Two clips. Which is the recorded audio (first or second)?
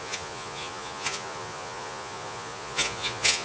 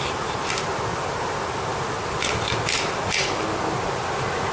second